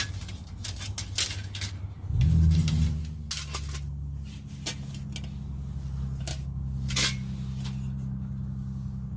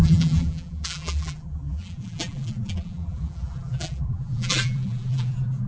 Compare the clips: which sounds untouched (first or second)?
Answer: first